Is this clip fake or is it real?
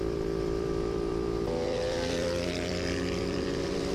fake